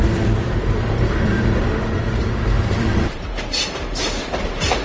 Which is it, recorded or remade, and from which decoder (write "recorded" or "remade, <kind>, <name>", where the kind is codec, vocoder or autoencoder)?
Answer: remade, vocoder, BigVGAN v2